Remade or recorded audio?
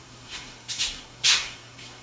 remade